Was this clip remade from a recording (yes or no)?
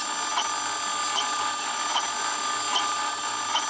no